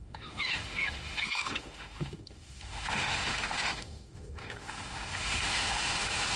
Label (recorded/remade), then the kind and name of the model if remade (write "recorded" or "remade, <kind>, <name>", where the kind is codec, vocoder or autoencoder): remade, autoencoder, DAC-VAE